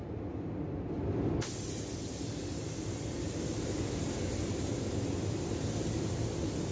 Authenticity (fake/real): real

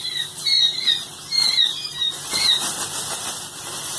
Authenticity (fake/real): real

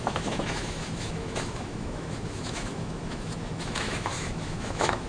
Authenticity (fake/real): fake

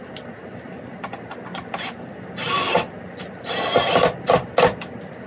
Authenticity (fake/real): real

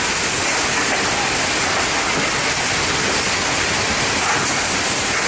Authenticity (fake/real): real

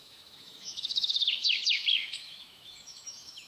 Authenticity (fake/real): fake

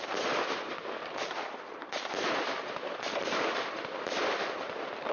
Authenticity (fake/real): real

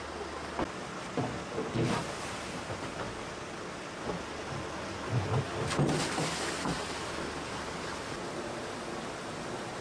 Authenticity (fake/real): real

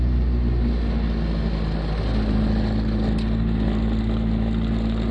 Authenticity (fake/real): real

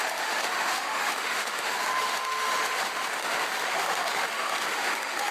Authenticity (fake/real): fake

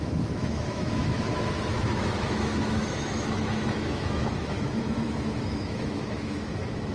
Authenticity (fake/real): fake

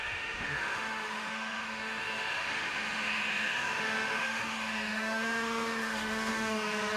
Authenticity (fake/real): fake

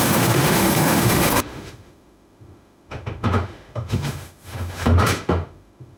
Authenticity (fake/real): fake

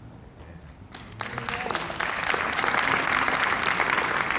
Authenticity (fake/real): real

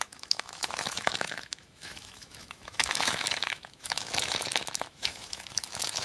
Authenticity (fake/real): fake